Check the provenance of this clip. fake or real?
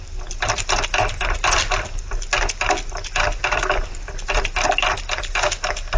real